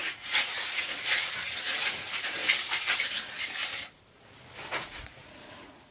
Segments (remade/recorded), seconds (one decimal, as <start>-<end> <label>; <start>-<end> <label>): 0.0-2.4 remade; 2.4-4.7 recorded; 4.7-5.9 remade